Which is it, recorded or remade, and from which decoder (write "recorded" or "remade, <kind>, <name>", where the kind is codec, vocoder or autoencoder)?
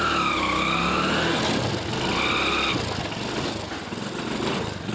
recorded